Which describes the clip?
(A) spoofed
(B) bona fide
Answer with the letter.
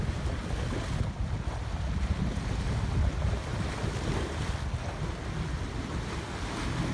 B